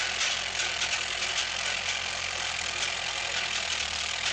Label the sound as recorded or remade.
recorded